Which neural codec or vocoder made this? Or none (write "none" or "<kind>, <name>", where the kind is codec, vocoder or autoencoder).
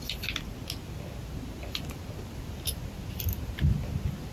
none